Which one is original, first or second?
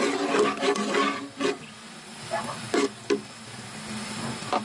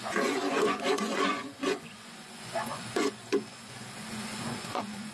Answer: first